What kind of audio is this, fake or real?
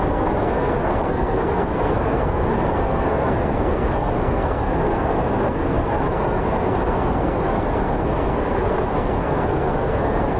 fake